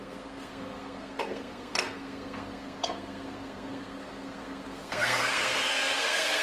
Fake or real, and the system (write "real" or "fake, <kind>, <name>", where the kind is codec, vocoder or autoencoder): fake, codec, SNAC